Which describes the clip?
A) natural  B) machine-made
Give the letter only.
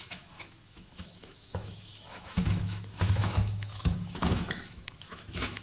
B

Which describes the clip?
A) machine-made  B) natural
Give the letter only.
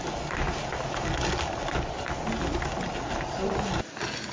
B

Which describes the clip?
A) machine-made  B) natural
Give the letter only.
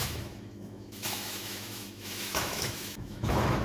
A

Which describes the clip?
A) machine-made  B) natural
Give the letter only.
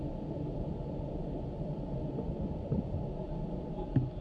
B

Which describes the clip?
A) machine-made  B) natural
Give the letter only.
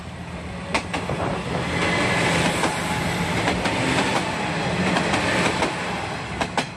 B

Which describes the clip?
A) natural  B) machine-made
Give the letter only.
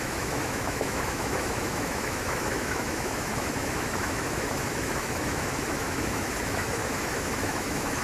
B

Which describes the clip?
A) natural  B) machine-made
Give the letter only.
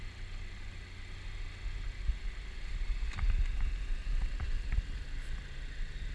A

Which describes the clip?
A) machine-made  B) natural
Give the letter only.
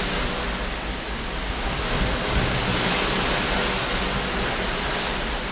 B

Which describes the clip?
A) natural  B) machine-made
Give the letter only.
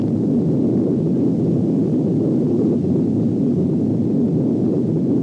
A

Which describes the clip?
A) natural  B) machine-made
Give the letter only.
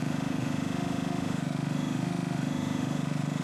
B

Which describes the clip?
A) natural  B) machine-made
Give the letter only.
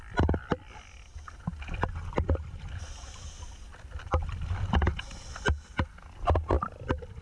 A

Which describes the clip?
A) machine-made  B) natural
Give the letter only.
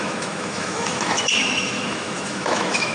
A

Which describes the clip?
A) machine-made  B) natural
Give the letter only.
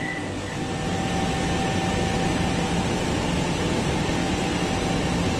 B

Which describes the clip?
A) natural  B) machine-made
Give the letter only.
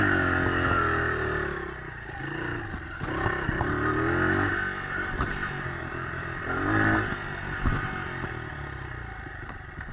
A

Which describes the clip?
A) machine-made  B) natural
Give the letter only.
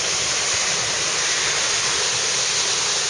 B